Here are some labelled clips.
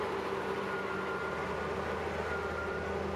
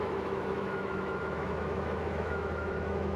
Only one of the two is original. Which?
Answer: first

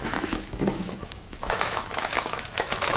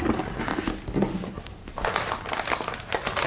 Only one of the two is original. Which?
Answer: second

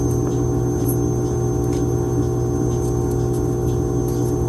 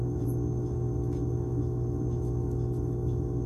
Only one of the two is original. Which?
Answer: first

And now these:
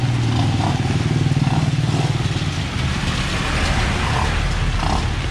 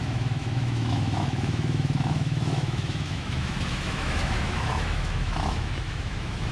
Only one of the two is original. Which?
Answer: first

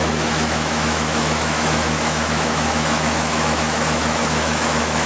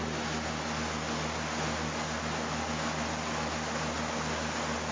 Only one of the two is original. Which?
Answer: second